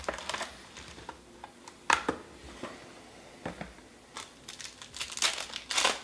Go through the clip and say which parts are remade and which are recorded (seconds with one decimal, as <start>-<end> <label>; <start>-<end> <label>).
0.0-6.0 recorded